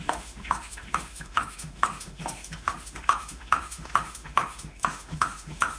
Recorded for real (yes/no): no